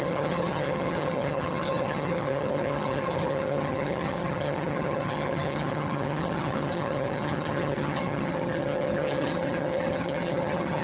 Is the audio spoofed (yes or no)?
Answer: yes